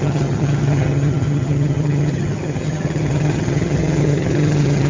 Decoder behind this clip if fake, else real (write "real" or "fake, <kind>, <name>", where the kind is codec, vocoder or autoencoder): fake, vocoder, HiFi-GAN